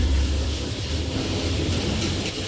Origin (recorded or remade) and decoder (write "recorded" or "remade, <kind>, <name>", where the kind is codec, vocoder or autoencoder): remade, vocoder, BigVGAN v2